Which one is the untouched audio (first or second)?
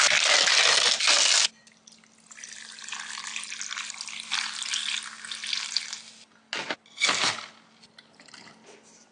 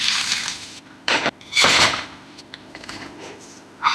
first